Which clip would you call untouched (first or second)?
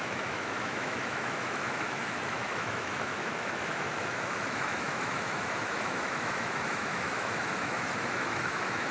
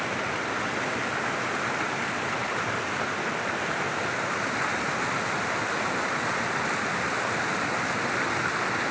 second